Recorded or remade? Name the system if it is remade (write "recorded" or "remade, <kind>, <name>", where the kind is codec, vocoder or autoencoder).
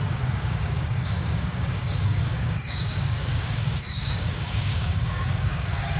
remade, codec, DAC